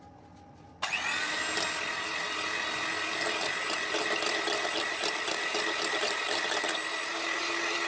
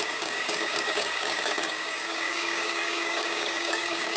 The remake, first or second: second